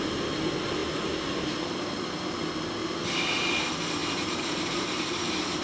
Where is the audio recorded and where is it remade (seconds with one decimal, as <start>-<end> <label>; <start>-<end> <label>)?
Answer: 0.0-2.8 recorded; 2.8-3.5 remade; 3.5-4.0 recorded; 4.0-4.8 remade; 4.8-5.6 recorded